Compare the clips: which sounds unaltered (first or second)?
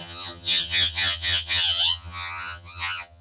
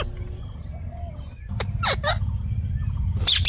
second